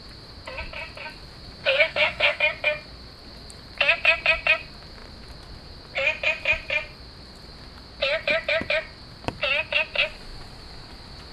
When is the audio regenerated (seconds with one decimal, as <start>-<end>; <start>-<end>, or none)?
1.6-2.4

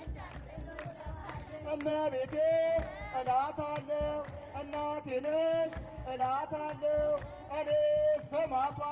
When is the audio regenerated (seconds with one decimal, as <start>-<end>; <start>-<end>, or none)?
1.2-1.9; 5.1-6.2

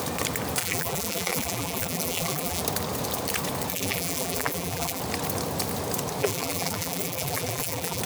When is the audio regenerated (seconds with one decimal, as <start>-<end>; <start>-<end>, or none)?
0.6-2.6; 3.7-5.0; 6.2-8.0

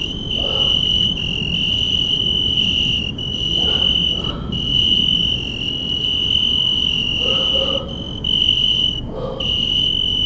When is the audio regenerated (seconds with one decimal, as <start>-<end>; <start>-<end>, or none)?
none

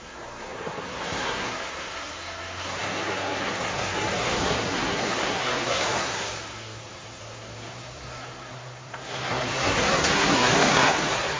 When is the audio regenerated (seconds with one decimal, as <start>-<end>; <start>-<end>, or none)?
0.0-11.4

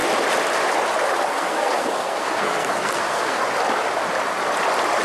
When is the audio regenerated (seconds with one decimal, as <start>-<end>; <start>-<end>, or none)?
1.3-3.4

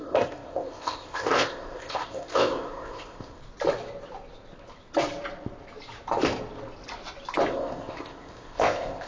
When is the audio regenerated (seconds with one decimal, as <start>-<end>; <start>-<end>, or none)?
0.0-3.4; 7.5-9.1

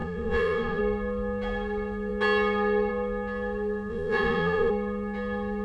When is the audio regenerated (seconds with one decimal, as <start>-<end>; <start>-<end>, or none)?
0.0-0.8; 3.9-4.7